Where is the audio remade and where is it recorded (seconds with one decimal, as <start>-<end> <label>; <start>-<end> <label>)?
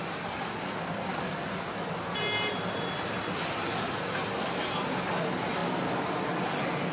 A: 0.0-6.9 recorded